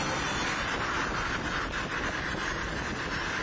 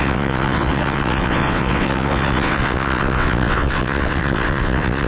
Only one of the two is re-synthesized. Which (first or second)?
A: second